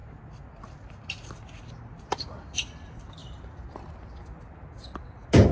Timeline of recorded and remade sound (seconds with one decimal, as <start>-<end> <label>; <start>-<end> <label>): 0.0-3.2 recorded; 3.2-4.1 remade; 4.1-5.5 recorded